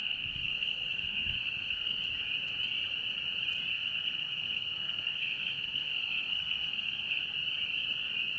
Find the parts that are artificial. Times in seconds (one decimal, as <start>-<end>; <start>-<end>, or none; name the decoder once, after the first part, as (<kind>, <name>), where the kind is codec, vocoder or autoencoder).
0.0-2.0 (codec, SNAC); 3.7-7.2